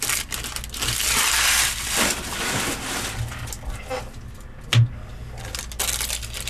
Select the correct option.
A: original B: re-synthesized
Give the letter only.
A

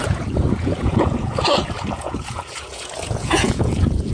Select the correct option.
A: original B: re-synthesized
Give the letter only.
B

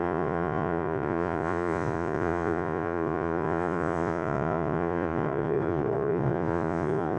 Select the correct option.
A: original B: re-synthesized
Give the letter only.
B